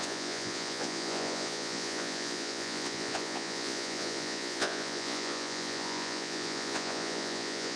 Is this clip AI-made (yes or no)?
yes